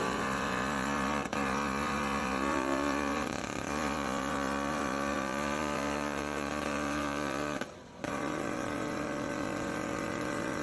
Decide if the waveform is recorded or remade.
remade